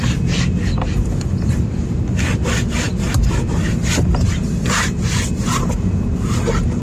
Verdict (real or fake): real